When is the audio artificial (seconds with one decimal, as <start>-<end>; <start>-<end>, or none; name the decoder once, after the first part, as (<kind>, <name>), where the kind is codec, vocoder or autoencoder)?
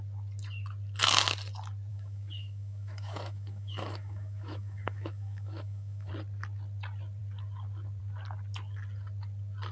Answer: 1.9-6.1 (autoencoder, DAC-VAE)